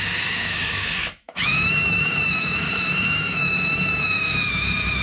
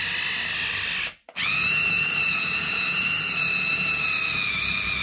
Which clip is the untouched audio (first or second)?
second